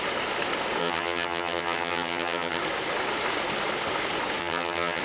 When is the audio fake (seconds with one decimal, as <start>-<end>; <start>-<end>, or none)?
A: 0.8-2.6; 4.4-5.0